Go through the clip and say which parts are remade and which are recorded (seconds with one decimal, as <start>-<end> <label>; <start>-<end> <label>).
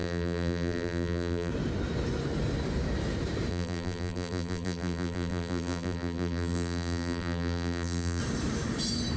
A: 0.0-1.5 remade; 1.5-3.5 recorded; 3.5-8.2 remade; 8.2-9.2 recorded